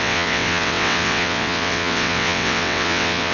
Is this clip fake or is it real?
fake